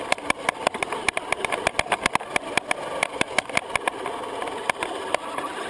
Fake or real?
real